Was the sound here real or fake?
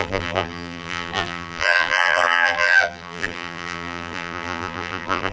fake